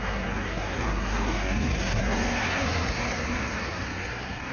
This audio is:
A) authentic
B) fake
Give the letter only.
B